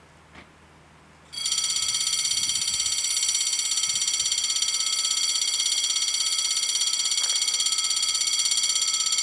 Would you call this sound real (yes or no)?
yes